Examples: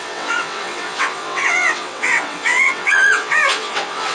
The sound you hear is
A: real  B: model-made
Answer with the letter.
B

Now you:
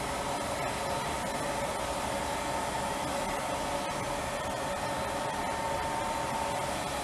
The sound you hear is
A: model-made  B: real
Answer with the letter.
B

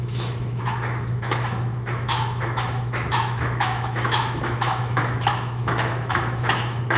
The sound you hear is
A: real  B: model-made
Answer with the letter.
B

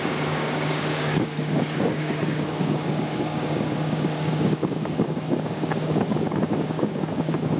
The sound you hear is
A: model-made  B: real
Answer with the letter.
A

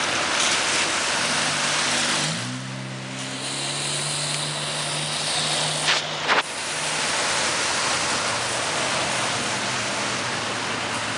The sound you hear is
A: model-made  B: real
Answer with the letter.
B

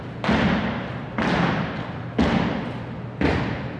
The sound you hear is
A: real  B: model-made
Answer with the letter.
A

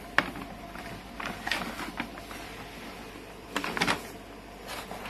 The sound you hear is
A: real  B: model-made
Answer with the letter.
A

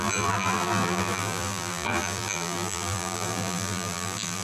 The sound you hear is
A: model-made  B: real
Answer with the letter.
A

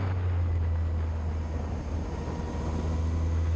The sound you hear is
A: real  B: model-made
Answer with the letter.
A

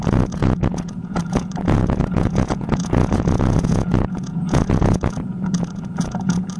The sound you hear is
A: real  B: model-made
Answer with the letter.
B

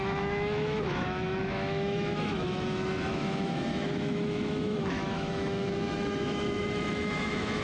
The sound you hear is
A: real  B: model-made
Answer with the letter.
B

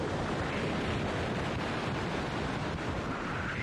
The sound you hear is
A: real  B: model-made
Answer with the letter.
A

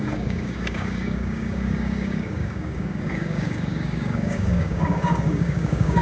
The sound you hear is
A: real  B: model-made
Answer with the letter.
B